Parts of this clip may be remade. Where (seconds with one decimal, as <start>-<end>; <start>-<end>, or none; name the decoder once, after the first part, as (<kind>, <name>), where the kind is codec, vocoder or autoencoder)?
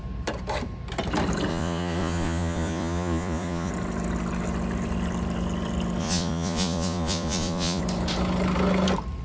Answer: 1.5-3.7 (vocoder, Vocos); 6.0-7.8